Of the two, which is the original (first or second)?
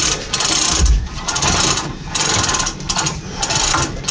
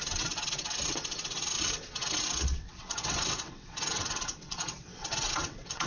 first